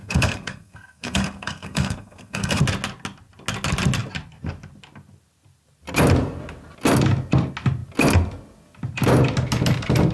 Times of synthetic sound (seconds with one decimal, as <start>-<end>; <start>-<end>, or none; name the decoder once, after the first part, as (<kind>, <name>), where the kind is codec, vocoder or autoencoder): 0.0-2.6 (codec, SNAC)